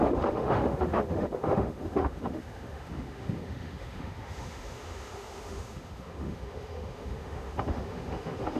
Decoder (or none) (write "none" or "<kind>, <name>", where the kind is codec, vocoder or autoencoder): autoencoder, DAC-VAE